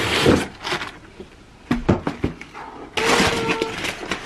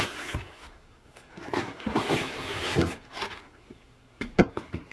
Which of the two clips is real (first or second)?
first